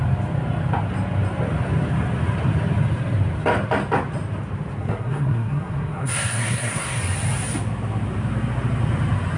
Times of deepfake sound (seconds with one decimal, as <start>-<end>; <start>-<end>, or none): 4.8-7.0